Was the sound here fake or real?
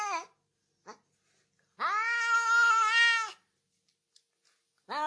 real